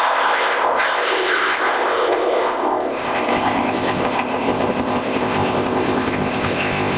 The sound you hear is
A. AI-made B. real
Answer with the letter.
A